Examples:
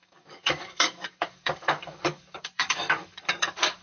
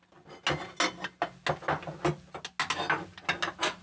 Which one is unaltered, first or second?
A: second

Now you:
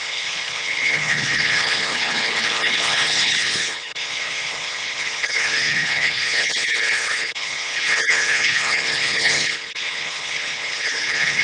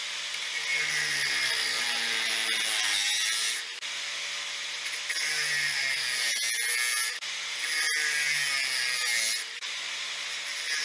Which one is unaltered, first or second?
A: second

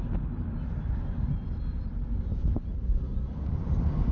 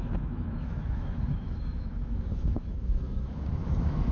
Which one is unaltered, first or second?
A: first